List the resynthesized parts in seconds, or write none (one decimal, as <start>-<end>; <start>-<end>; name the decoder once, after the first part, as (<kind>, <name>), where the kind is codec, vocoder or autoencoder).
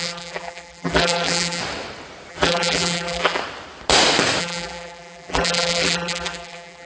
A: 0.0-1.6 (vocoder, BigVGAN v2); 2.3-3.4; 4.4-6.9